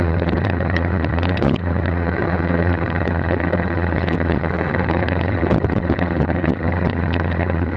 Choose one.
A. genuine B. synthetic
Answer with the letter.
B